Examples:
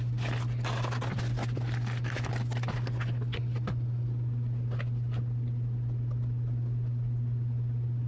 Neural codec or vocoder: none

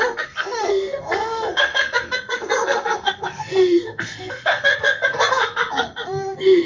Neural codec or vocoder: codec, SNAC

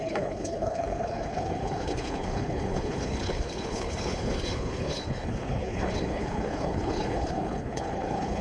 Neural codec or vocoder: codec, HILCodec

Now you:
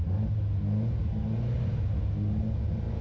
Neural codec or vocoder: none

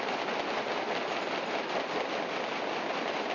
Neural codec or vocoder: none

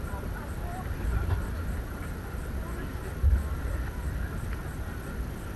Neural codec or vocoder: none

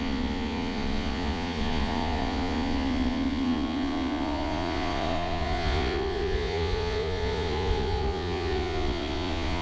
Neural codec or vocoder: vocoder, Vocos